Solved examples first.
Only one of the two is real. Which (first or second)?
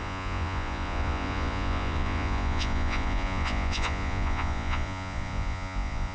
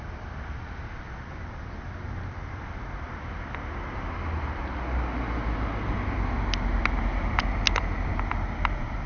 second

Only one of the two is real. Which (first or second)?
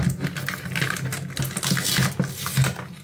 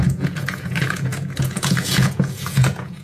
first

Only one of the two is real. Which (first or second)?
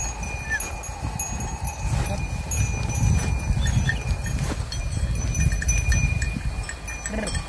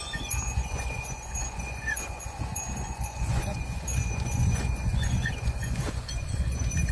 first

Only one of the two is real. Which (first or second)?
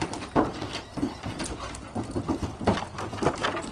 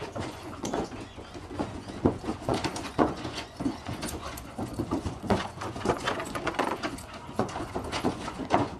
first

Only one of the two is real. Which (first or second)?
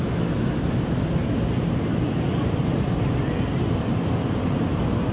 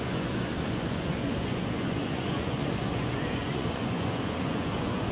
first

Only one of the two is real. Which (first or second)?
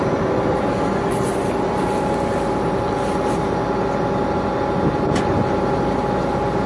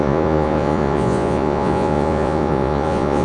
first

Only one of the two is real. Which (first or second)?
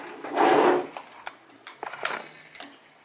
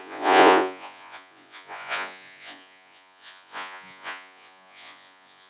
first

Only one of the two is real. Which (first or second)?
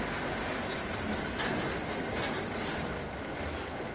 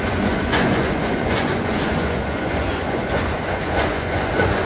first